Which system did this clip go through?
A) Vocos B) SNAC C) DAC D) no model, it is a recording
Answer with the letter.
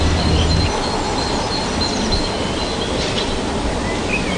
D